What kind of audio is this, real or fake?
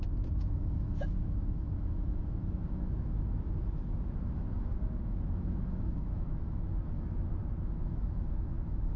fake